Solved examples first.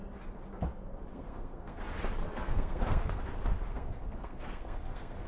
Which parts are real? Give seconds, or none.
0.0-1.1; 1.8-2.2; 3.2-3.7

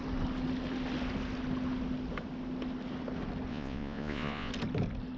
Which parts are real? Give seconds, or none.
0.0-3.5; 4.5-5.2

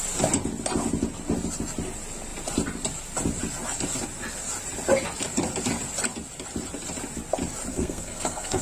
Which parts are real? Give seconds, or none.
0.0-7.7

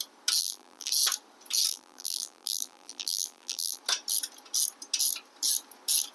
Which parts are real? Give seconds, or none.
0.0-0.4; 0.9-1.7; 3.8-6.1

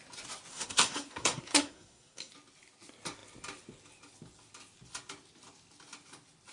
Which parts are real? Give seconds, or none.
0.0-0.5; 2.3-6.5